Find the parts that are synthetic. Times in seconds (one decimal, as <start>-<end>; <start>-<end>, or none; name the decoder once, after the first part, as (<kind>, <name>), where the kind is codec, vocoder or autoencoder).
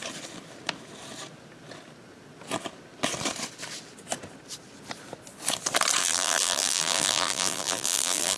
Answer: 6.0-8.4 (vocoder, BigVGAN v2)